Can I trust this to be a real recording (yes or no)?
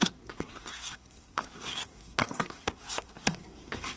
no